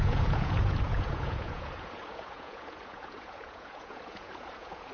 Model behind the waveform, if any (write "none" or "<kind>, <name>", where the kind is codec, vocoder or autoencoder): vocoder, Vocos